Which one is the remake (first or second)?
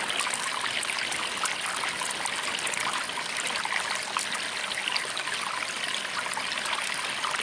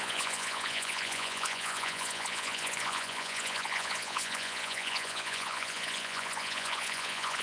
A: second